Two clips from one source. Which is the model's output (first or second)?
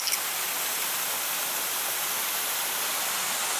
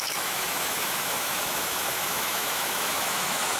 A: second